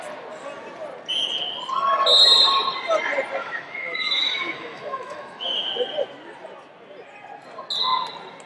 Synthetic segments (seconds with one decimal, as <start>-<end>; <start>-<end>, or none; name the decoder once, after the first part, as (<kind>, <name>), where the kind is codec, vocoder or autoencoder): 3.4-5.7 (autoencoder, DAC-VAE)

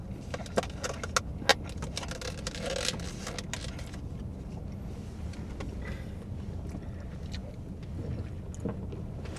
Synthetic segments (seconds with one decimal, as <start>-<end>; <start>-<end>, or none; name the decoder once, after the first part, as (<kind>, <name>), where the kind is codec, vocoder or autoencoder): none

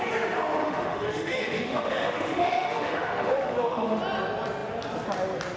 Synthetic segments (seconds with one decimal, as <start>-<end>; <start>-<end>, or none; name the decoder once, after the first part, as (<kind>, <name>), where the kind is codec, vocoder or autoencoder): 0.6-4.0 (autoencoder, DAC-VAE)

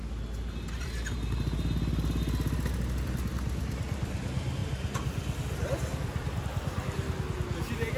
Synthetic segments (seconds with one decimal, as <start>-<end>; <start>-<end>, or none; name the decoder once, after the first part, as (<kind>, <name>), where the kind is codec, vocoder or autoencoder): none

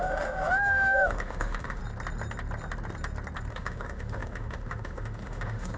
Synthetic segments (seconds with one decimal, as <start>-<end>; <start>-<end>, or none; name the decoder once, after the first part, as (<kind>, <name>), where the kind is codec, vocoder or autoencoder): 0.0-1.8 (autoencoder, DAC-VAE); 3.5-5.8

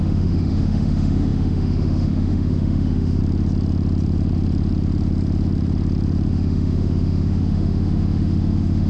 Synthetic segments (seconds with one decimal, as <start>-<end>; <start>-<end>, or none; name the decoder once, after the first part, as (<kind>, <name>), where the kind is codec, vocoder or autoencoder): 0.0-3.2 (autoencoder, DAC-VAE); 6.3-8.9